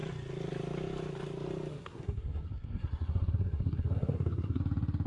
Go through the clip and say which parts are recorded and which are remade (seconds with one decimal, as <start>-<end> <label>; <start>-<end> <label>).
0.0-1.7 recorded; 1.7-4.6 remade; 4.6-5.1 recorded